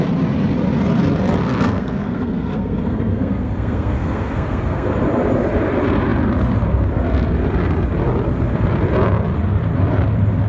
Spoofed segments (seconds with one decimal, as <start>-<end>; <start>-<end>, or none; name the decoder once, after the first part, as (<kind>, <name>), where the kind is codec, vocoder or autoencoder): 1.4-4.9 (codec, SNAC)